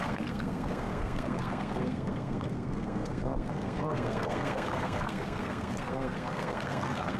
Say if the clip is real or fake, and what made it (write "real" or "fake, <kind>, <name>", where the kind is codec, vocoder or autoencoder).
fake, codec, SNAC